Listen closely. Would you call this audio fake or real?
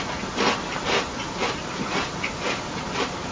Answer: fake